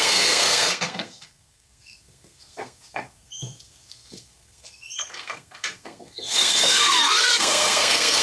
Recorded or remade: remade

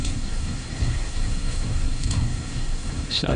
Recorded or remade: remade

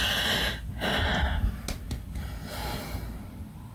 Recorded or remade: recorded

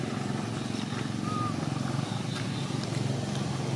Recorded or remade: recorded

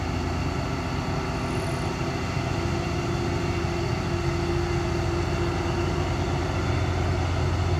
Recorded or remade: recorded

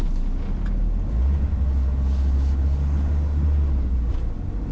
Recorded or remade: recorded